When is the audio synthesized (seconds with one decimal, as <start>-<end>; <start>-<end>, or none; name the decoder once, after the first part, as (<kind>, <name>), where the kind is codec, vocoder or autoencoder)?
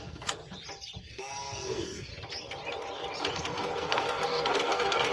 0.0-0.4 (codec, SNAC); 1.0-2.1; 3.3-5.1